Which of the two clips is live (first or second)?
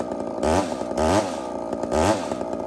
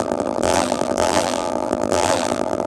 first